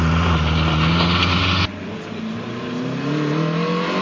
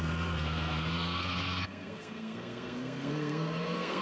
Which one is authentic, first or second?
first